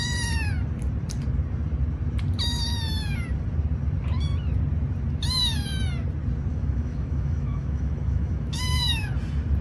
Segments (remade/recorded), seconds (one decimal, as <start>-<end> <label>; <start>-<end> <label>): 0.0-6.5 recorded; 6.5-9.1 remade; 9.1-9.6 recorded